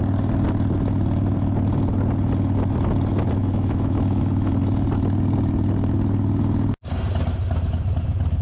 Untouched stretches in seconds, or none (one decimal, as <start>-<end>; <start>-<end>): 0.0-3.4; 4.6-8.4